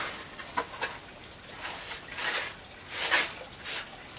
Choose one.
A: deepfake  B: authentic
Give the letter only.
B